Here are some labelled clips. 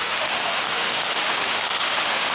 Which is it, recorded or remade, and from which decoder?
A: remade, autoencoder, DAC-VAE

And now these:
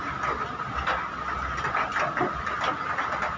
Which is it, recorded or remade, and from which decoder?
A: recorded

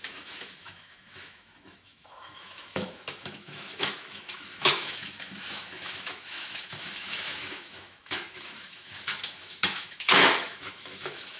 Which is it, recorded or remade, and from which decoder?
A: remade, autoencoder, DAC-VAE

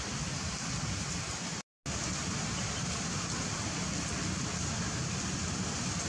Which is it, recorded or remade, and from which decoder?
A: recorded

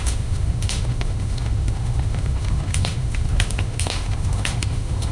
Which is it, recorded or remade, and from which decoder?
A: remade, autoencoder, DAC-VAE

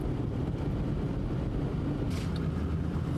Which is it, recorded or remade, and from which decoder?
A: recorded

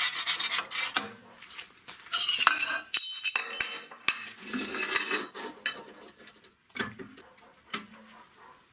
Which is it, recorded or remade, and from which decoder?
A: recorded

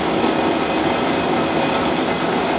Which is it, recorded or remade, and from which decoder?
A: recorded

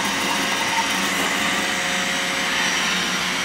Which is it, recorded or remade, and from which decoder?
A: recorded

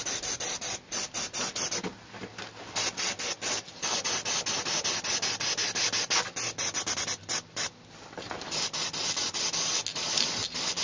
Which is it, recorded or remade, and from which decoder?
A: recorded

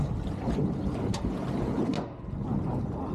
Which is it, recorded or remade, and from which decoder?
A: recorded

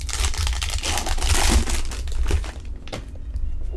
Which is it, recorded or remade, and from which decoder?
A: recorded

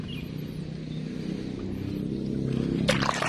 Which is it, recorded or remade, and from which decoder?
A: recorded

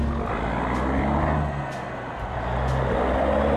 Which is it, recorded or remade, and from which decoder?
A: recorded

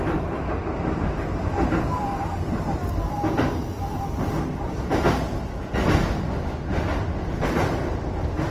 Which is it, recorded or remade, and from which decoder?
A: recorded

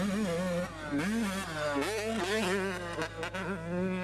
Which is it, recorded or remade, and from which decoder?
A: recorded